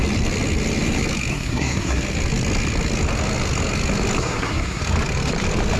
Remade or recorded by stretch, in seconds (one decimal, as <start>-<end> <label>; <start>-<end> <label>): 0.0-1.3 recorded; 1.3-2.0 remade; 2.0-4.2 recorded; 4.2-4.8 remade; 4.8-5.8 recorded

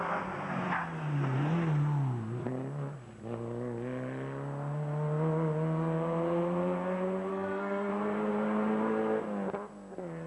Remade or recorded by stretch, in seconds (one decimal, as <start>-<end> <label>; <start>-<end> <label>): 0.0-7.3 recorded; 7.3-7.9 remade; 7.9-10.3 recorded